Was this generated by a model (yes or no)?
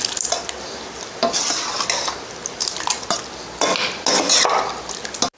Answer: no